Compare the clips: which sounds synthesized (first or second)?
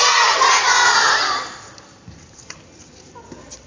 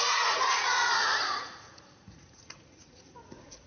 second